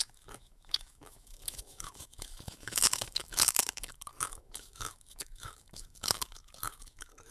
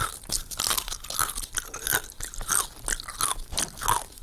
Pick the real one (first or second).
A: second